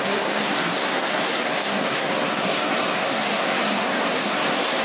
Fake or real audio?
fake